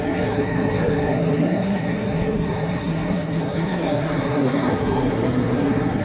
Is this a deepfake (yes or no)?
yes